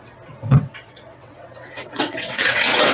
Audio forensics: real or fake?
fake